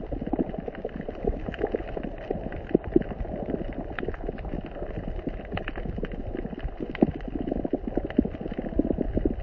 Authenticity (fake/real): real